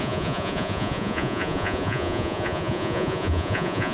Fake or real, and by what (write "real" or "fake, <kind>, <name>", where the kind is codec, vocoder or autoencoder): fake, vocoder, Vocos